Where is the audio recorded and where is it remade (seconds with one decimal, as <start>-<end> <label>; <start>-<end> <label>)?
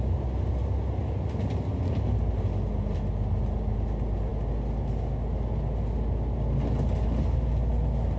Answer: 0.0-8.2 recorded